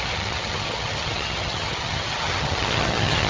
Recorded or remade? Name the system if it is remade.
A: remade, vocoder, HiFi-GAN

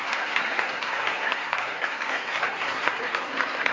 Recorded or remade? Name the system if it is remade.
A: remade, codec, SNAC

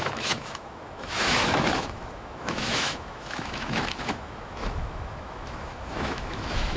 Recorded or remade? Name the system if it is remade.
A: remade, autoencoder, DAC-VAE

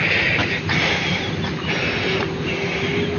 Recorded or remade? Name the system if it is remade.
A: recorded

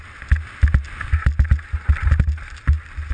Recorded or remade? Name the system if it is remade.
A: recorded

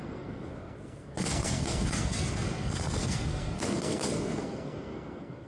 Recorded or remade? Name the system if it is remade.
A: remade, codec, SNAC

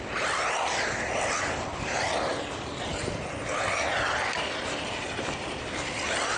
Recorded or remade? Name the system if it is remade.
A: recorded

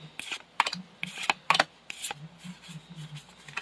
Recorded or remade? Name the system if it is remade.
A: recorded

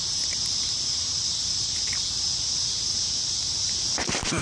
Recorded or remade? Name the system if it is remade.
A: remade, vocoder, BigVGAN v2